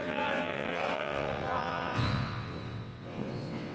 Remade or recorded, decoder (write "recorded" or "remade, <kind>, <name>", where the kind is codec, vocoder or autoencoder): remade, vocoder, WaveNeXt